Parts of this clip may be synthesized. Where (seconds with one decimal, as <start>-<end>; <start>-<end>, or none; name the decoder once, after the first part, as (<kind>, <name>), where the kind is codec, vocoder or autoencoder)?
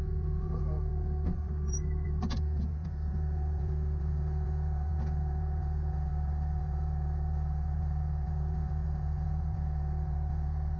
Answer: 0.0-0.9 (vocoder, Vocos); 2.3-6.1; 6.6-10.8